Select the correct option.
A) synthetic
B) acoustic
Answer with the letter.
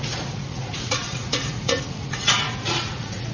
A